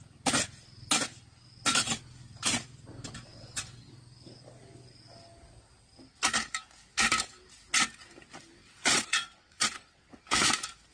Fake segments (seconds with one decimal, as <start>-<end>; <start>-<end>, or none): 3.3-4.0; 8.6-10.2